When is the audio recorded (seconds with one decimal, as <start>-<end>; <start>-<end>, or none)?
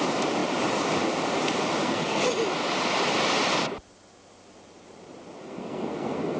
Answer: 0.0-1.8; 2.3-5.4